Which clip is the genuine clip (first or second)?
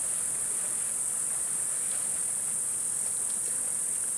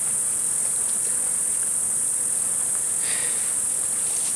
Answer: second